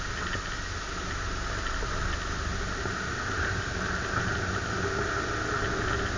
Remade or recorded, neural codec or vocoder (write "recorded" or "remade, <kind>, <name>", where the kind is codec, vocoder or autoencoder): recorded